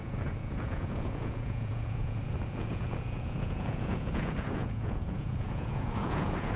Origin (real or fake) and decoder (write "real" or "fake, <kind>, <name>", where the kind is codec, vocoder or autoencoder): fake, vocoder, Vocos